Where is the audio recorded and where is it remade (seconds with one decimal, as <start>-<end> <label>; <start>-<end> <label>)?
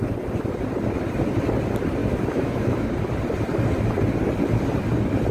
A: 0.0-2.0 recorded; 2.0-2.9 remade; 2.9-5.3 recorded